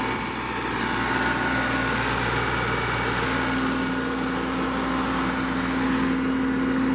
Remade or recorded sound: recorded